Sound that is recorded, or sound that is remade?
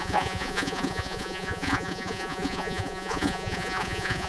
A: remade